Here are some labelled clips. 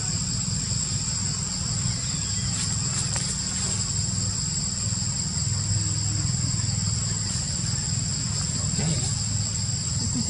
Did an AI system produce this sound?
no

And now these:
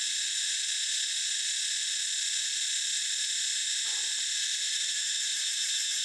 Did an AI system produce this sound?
no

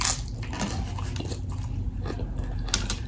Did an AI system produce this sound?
no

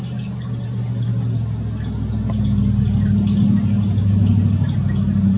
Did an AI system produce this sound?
no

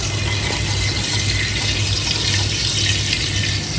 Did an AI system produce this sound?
no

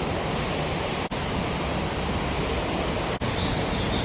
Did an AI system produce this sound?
no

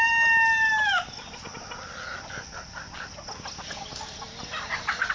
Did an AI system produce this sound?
no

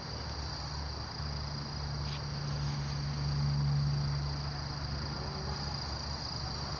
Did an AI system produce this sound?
no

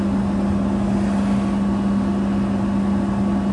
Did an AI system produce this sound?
no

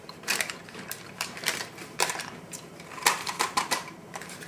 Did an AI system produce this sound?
yes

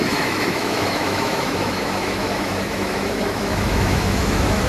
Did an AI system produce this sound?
yes